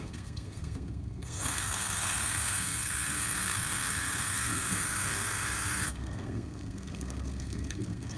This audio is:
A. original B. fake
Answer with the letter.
B